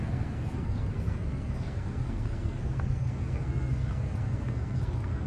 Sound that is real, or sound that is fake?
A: fake